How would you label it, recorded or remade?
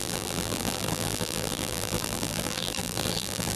remade